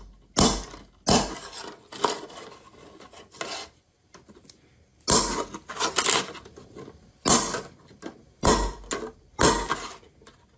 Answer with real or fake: real